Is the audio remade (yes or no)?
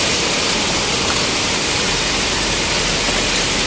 no